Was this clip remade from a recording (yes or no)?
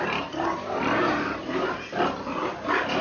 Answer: no